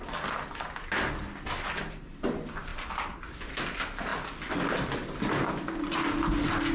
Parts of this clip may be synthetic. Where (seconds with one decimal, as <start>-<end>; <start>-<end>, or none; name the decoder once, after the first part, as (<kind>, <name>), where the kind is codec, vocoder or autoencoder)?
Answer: none

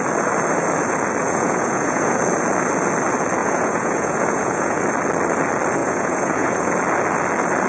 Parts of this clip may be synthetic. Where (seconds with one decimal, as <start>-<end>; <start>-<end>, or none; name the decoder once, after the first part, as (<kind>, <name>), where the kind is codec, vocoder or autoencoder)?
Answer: 1.2-2.2 (vocoder, Vocos); 3.4-4.8; 5.8-6.7

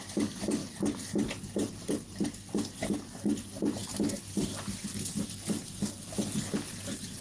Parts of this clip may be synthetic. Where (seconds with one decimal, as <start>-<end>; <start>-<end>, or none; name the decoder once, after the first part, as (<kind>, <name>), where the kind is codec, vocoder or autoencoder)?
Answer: none

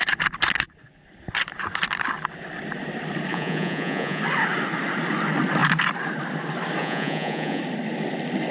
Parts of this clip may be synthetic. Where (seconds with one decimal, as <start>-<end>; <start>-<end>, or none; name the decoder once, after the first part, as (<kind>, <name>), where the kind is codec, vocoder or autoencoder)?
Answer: 3.3-4.2 (vocoder, Vocos); 6.8-7.6

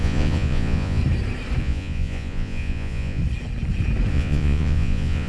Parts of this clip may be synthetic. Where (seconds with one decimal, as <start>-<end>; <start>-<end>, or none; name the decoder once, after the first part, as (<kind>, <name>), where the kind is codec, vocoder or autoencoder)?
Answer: 0.0-1.0 (vocoder, Vocos); 1.6-3.2; 4.1-5.3